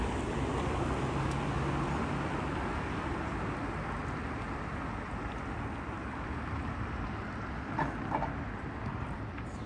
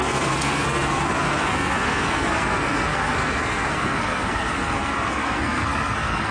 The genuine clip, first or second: first